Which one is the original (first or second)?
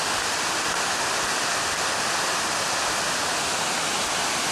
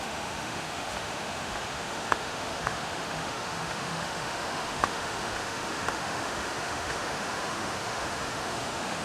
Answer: first